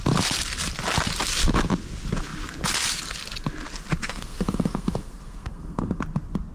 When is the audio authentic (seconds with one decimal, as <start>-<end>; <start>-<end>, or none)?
0.0-4.0; 6.0-6.5